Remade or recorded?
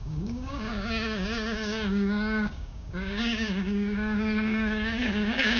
remade